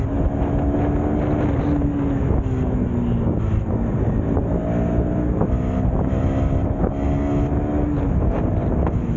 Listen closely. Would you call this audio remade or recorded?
recorded